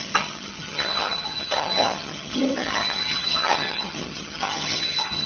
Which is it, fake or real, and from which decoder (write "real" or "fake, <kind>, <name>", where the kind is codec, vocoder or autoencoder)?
fake, vocoder, HiFi-GAN